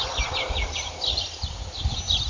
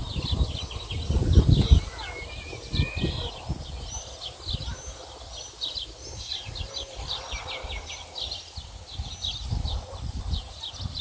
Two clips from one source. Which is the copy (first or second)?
first